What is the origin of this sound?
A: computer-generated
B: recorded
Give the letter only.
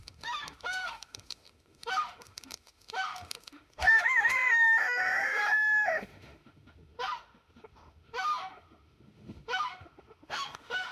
A